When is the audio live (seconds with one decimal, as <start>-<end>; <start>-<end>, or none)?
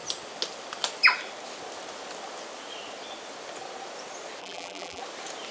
0.0-4.4; 5.0-5.5